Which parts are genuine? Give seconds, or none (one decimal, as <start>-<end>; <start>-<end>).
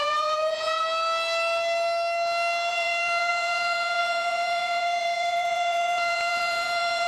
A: 0.8-2.7